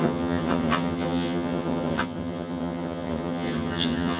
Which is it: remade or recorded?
remade